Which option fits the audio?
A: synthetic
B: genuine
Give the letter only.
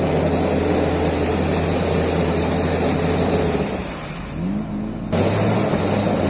B